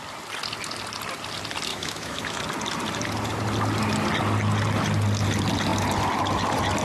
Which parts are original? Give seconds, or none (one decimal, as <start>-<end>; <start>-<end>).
0.0-1.7; 2.4-6.8